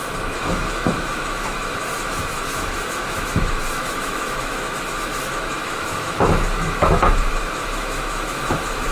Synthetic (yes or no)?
yes